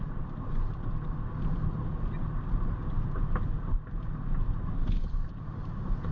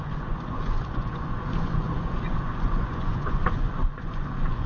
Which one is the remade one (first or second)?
second